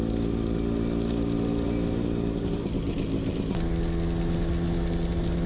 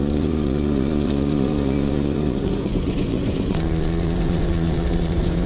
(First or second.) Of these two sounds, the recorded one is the first